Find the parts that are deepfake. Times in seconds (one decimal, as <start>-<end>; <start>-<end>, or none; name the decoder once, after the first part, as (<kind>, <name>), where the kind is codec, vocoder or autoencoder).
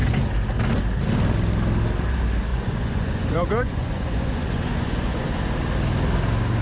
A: 2.5-5.4 (vocoder, Vocos)